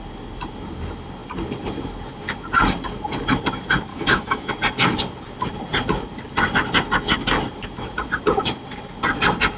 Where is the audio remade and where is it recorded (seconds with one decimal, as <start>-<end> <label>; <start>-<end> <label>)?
0.0-3.9 recorded; 3.9-4.5 remade; 4.5-9.6 recorded